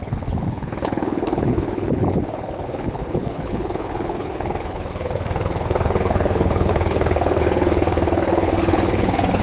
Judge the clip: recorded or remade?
remade